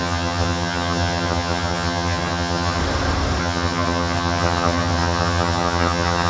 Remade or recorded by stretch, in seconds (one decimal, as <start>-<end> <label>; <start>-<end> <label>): 0.0-2.8 remade; 2.8-3.4 recorded; 3.4-6.3 remade